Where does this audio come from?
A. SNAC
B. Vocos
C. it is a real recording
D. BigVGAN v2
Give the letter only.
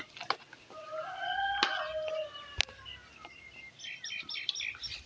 C